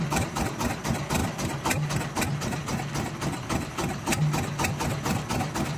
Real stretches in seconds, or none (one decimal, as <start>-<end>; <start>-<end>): none